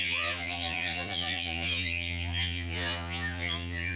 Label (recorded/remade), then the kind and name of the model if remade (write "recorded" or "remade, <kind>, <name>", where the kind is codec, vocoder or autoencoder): remade, vocoder, Vocos